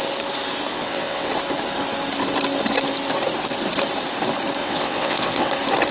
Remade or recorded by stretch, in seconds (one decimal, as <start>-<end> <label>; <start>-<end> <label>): 0.0-0.7 recorded; 0.7-1.3 remade; 1.3-4.6 recorded; 4.6-5.5 remade; 5.5-5.9 recorded